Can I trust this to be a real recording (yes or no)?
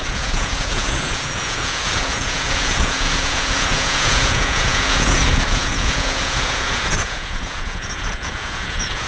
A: no